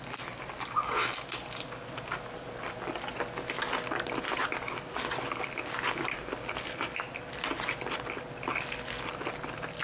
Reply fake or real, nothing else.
real